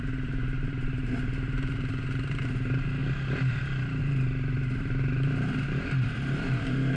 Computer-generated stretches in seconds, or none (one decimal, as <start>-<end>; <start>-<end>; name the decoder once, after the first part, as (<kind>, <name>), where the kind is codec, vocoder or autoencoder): 0.0-3.0 (vocoder, BigVGAN v2); 4.0-7.0